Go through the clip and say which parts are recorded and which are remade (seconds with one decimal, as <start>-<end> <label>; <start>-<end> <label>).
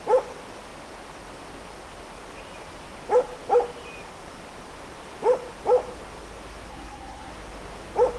0.0-6.7 recorded; 6.7-7.3 remade; 7.3-8.2 recorded